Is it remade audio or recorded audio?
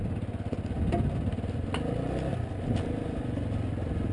recorded